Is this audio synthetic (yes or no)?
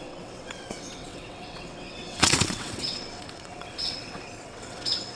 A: yes